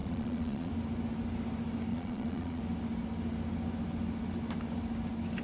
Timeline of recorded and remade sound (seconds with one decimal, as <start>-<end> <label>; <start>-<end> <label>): 0.0-0.7 remade; 0.7-1.9 recorded; 1.9-2.6 remade; 2.6-5.4 recorded